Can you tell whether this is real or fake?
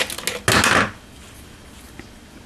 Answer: real